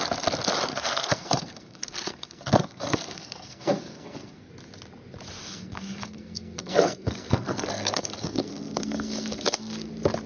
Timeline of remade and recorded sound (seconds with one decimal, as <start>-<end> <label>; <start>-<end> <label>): 0.0-0.7 recorded; 0.7-4.5 remade; 4.5-5.4 recorded; 5.4-9.9 remade; 9.9-10.3 recorded